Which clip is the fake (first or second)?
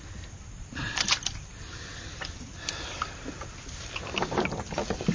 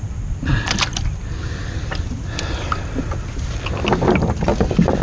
first